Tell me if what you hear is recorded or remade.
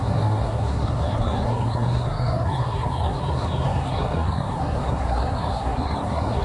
remade